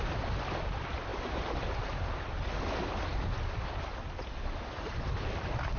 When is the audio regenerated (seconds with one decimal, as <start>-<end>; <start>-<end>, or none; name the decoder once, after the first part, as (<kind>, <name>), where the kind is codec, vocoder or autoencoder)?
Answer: none